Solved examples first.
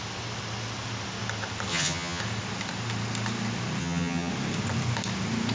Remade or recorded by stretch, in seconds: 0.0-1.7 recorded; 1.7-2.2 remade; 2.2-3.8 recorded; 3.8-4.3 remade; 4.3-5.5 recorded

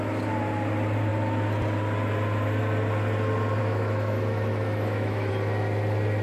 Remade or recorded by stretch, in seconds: 0.0-3.6 recorded; 3.6-5.3 remade; 5.3-6.2 recorded

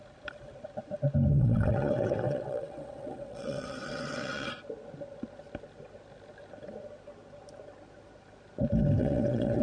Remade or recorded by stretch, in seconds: 0.0-1.3 recorded; 1.3-4.5 remade; 4.5-9.0 recorded; 9.0-9.6 remade